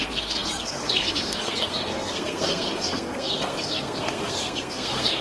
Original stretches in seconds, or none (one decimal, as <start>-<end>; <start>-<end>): none